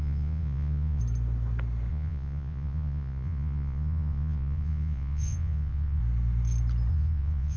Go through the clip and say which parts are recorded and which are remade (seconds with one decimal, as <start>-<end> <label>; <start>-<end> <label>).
0.0-1.0 remade; 1.0-1.9 recorded; 1.9-6.0 remade; 6.0-6.9 recorded; 6.9-7.6 remade